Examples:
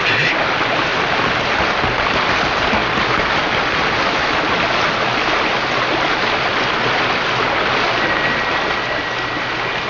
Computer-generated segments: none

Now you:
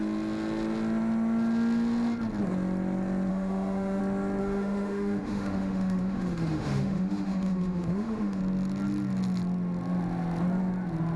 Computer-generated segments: 3.3-4.0 (autoencoder, DAC-VAE); 4.4-8.4

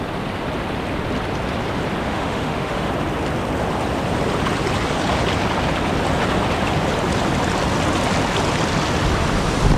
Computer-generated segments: 2.0-2.9 (autoencoder, DAC-VAE)

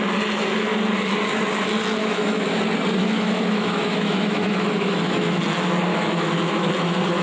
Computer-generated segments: 2.0-2.6 (autoencoder, DAC-VAE); 3.0-5.4; 5.9-6.7

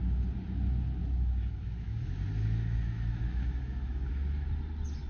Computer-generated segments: 1.0-4.1 (autoencoder, DAC-VAE)